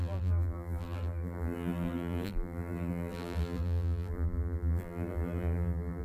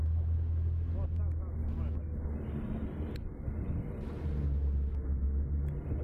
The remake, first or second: first